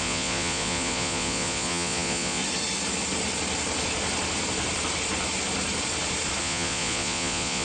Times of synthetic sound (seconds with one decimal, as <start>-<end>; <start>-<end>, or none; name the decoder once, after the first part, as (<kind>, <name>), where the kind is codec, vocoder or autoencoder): 0.0-2.4 (vocoder, Vocos); 6.4-7.6